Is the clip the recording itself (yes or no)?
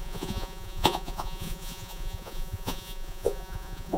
no